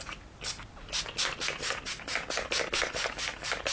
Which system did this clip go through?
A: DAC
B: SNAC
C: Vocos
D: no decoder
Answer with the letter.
D